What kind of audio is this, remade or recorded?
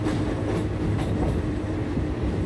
recorded